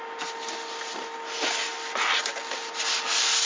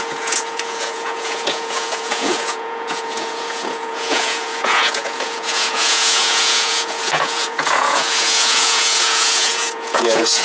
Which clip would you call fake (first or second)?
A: second